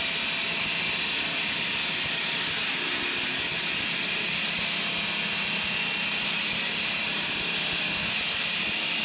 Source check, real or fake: real